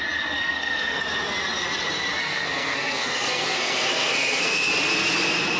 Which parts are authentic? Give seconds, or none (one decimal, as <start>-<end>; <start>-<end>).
0.0-0.4; 1.0-2.2; 4.7-5.6